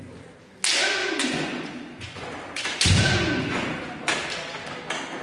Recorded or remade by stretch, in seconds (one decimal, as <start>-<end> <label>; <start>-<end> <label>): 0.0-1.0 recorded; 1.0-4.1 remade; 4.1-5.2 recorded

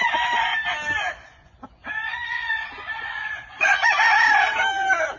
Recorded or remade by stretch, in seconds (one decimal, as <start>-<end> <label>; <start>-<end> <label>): 0.0-0.5 remade; 0.5-1.1 recorded; 1.1-4.1 remade; 4.1-5.2 recorded

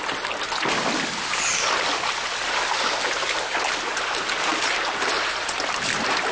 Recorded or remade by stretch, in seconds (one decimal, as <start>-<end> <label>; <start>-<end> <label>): 0.0-6.3 recorded

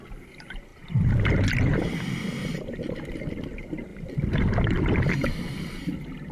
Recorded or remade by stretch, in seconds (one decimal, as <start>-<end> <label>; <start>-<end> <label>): 0.0-6.3 recorded